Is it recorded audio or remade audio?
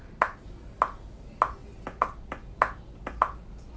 recorded